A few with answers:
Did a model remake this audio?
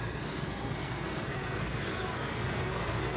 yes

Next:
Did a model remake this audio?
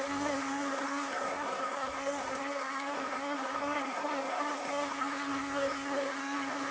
yes